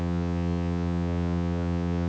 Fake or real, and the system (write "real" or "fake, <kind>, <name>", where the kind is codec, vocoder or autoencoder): fake, vocoder, HiFi-GAN